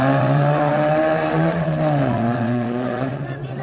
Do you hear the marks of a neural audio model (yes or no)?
yes